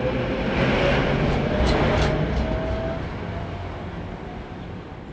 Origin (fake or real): real